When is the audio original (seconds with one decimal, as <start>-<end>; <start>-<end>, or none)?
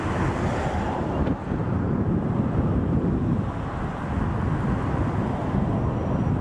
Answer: 0.0-6.4